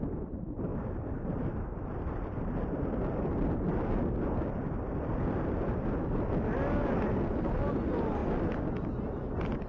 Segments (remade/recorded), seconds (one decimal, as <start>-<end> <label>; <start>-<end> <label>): 0.0-9.7 recorded